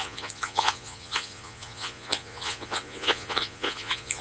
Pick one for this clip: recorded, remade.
remade